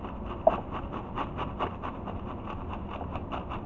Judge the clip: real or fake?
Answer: fake